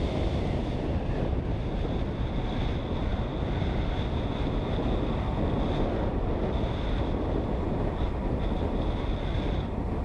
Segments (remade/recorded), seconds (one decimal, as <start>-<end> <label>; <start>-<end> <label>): 0.0-10.0 recorded